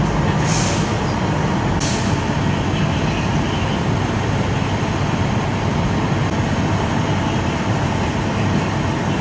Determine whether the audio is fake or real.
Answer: real